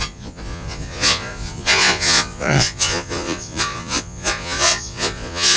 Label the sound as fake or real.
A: fake